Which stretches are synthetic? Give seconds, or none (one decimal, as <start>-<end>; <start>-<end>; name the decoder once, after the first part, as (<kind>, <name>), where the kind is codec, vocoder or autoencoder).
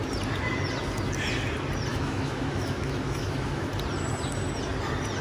1.9-3.7 (autoencoder, DAC-VAE)